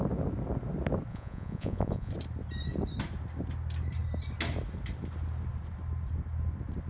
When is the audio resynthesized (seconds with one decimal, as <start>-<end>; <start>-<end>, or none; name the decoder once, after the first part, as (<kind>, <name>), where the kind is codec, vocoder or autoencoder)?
1.1-2.1 (vocoder, Vocos)